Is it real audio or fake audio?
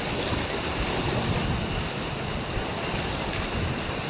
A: real